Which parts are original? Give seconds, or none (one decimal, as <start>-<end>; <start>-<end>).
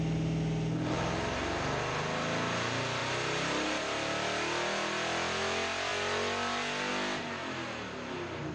0.0-3.0; 3.8-8.5